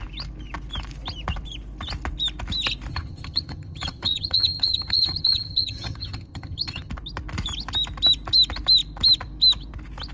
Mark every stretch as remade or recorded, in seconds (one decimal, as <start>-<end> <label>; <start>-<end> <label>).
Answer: 0.0-2.9 recorded; 2.9-6.9 remade; 6.9-10.1 recorded